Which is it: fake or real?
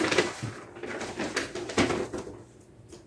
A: real